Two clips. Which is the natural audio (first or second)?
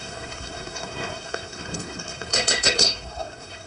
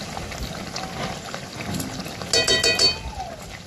second